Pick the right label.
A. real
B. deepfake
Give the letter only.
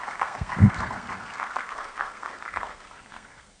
B